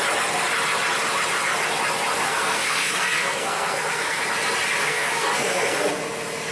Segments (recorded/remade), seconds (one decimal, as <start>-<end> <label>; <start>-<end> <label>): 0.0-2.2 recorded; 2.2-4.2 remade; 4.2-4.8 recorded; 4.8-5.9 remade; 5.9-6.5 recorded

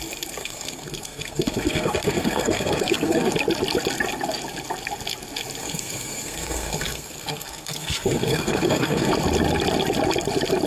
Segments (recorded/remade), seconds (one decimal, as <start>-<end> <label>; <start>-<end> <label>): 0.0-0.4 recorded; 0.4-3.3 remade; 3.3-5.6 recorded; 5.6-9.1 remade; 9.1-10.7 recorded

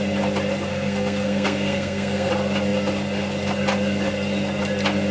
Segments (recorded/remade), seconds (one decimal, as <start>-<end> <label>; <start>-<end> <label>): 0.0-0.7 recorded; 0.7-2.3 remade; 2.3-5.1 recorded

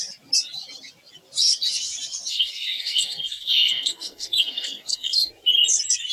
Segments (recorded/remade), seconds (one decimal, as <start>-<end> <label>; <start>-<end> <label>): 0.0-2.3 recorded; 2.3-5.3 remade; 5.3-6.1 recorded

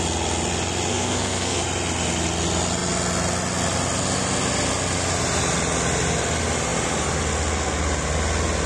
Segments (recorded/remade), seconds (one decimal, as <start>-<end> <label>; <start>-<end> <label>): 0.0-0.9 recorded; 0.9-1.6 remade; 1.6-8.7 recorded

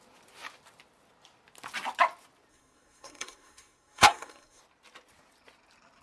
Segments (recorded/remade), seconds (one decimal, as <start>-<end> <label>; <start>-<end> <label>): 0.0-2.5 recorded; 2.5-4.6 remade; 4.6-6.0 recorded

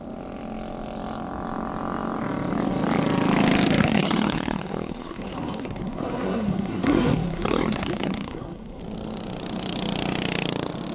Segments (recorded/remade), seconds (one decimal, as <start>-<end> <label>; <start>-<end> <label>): 0.0-3.8 recorded; 3.8-8.8 remade; 8.8-10.9 recorded